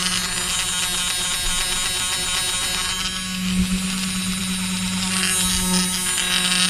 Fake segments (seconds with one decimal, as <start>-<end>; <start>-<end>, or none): none